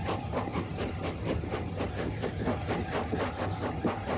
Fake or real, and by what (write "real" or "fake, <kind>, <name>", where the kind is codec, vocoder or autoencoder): real